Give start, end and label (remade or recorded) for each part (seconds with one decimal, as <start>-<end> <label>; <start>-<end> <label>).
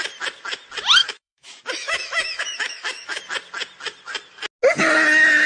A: 0.0-1.0 recorded; 1.0-3.2 remade; 3.2-5.5 recorded